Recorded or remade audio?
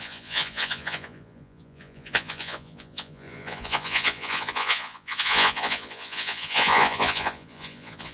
remade